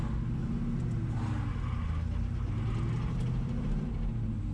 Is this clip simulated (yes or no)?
no